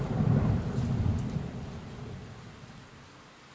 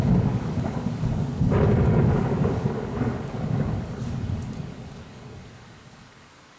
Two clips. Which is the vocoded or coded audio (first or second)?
second